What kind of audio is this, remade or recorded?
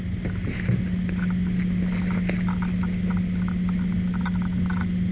recorded